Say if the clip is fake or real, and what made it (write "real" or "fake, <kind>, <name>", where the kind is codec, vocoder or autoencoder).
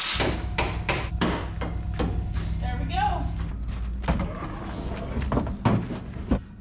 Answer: real